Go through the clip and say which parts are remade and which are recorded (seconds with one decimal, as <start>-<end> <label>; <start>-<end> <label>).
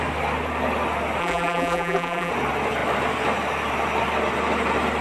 0.0-1.2 recorded; 1.2-2.3 remade; 2.3-5.0 recorded